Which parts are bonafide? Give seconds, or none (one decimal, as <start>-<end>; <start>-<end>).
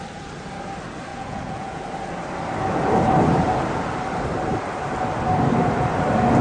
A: 0.0-1.1; 1.8-6.4